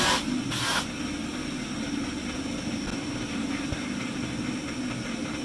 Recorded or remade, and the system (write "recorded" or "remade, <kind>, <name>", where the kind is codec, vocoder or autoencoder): recorded